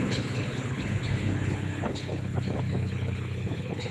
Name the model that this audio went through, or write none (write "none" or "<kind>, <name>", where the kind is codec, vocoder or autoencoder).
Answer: codec, HILCodec